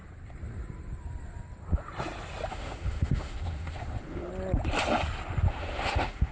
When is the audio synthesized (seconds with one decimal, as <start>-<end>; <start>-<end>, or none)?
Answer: 2.5-4.3; 5.5-6.3